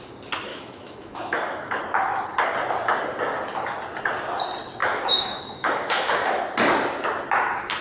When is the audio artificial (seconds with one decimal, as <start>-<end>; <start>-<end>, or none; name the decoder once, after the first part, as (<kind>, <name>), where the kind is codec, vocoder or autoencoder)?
0.5-1.8 (autoencoder, DAC-VAE); 4.8-6.4